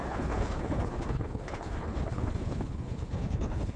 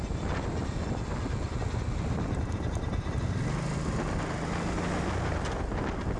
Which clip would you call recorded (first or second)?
second